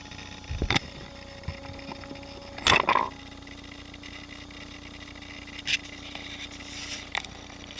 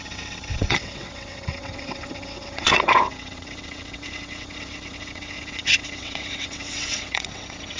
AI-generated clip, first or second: second